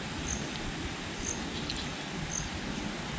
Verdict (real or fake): real